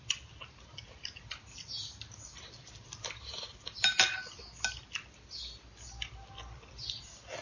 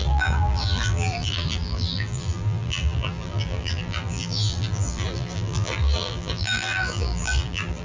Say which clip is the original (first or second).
first